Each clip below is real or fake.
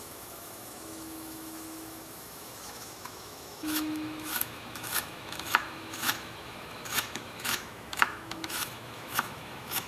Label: fake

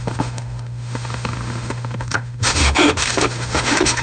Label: fake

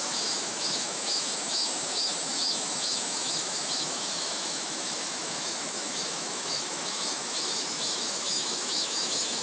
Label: fake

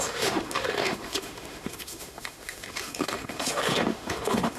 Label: fake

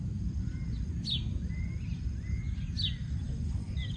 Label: real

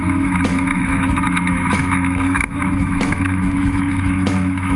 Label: fake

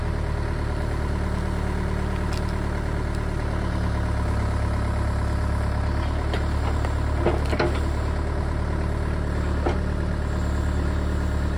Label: real